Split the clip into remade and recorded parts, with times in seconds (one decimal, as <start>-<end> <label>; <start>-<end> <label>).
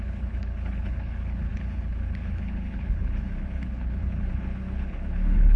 0.0-5.6 remade